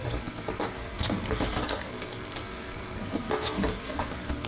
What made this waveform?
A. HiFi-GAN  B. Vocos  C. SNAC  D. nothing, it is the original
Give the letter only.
C